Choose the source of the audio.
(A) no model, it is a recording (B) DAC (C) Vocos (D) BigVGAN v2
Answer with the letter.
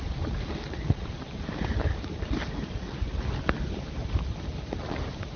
D